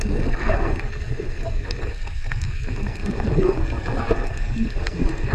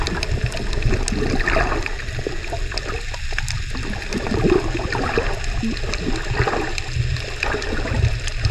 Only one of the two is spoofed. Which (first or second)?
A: first